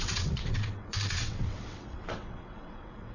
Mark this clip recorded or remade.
remade